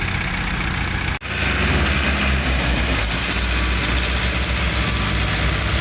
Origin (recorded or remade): recorded